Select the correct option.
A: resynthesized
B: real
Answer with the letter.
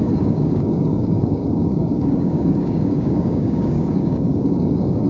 A